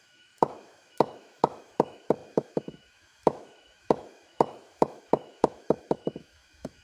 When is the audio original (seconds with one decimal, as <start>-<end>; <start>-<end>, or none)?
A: none